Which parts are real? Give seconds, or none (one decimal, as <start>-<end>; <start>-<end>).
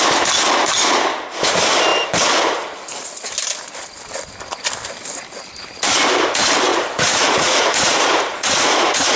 0.0-6.7